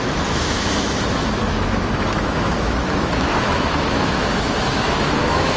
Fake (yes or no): yes